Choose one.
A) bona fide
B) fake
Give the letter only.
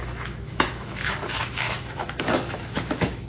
B